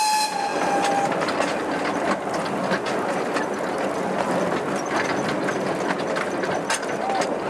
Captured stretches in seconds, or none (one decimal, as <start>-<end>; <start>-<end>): 0.0-7.5